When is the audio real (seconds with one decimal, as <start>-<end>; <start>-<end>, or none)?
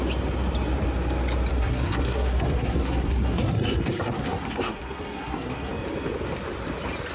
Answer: 0.0-1.5; 5.7-7.1